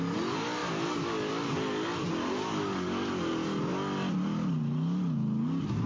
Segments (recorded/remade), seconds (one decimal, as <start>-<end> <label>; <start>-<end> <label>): 0.0-2.4 recorded; 2.4-3.1 remade; 3.1-5.9 recorded